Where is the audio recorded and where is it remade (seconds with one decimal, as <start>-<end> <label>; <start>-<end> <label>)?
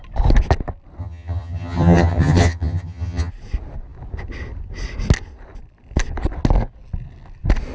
0.0-1.0 recorded; 1.0-3.3 remade; 3.3-7.7 recorded